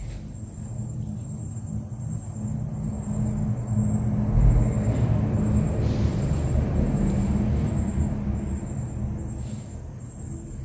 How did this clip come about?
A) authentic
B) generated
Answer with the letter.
A